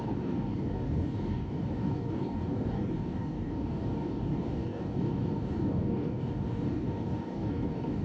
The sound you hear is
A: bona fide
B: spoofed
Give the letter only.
B